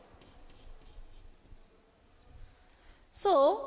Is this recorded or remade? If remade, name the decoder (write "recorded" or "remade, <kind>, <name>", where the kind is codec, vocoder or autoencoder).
recorded